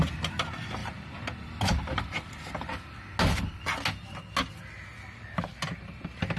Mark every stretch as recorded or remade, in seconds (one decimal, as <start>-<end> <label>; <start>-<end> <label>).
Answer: 0.0-6.4 recorded